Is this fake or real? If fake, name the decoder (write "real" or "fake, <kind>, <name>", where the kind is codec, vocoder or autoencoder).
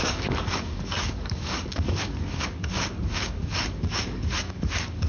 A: fake, codec, DAC